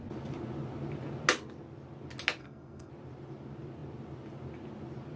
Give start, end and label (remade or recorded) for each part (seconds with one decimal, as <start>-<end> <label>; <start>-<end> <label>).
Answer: 0.0-2.4 recorded; 2.4-2.9 remade; 2.9-5.2 recorded

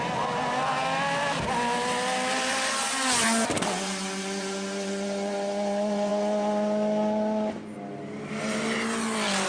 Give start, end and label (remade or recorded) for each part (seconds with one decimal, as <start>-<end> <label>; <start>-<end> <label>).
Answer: 0.0-9.5 recorded

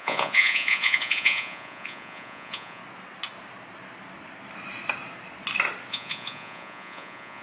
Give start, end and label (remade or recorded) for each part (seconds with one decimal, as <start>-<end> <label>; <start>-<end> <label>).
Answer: 0.0-2.8 remade; 2.8-5.9 recorded; 5.9-7.4 remade

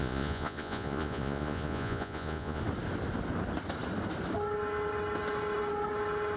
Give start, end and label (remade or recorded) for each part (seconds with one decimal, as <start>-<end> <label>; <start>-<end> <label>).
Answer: 0.0-2.6 remade; 2.6-6.4 recorded

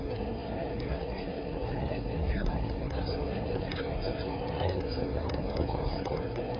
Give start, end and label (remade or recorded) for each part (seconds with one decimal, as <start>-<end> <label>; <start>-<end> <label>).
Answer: 0.0-6.6 remade